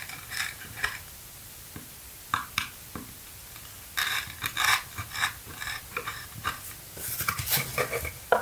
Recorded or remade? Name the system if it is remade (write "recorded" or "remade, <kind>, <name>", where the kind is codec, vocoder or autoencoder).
remade, vocoder, BigVGAN v2